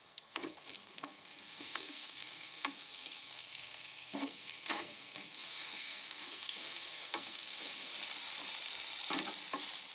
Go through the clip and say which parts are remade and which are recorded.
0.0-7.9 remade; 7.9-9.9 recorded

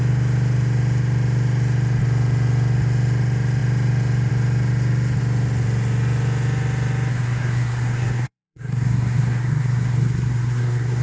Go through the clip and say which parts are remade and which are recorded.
0.0-7.1 recorded; 7.1-11.0 remade

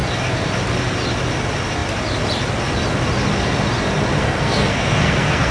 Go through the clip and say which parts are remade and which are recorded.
0.0-4.2 recorded; 4.2-5.5 remade

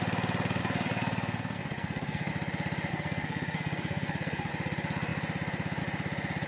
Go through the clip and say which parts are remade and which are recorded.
0.0-0.6 recorded; 0.6-2.3 remade; 2.3-2.9 recorded; 2.9-4.5 remade; 4.5-6.5 recorded

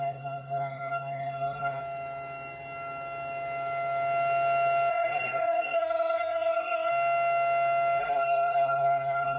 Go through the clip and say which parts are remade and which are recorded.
0.0-1.8 remade; 1.8-4.9 recorded; 4.9-6.9 remade; 6.9-8.0 recorded; 8.0-9.4 remade

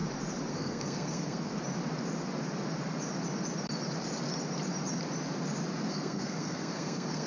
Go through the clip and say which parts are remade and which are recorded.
0.0-0.5 recorded; 0.5-1.5 remade; 1.5-5.9 recorded; 5.9-7.3 remade